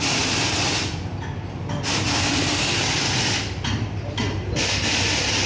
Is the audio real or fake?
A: real